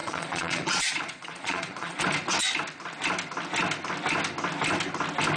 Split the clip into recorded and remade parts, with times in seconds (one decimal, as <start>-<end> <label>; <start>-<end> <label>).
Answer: 0.0-2.0 remade; 2.0-5.4 recorded